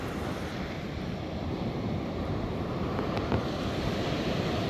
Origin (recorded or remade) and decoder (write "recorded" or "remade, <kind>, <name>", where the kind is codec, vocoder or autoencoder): recorded